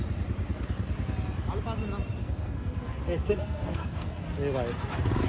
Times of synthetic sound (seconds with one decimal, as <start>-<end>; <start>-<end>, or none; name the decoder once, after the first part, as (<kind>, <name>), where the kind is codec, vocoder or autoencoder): 2.2-4.2 (codec, SNAC)